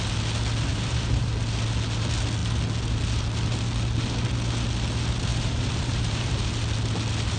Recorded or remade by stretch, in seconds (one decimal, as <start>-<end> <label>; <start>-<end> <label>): 0.0-0.7 recorded; 0.7-1.3 remade; 1.3-5.3 recorded; 5.3-6.5 remade; 6.5-7.4 recorded